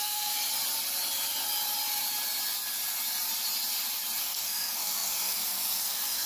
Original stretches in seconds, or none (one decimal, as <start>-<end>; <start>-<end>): 0.4-4.2

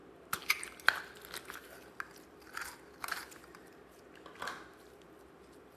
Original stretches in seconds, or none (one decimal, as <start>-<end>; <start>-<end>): 0.0-5.8

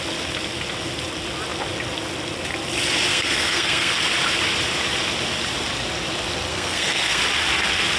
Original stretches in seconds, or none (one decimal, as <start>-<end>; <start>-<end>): 0.0-3.1; 3.9-6.5; 7.2-8.0